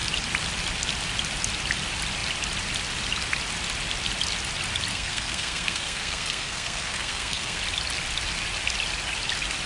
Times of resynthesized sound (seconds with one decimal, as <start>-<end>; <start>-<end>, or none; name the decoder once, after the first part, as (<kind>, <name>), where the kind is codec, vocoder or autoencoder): 4.9-7.6 (codec, SNAC)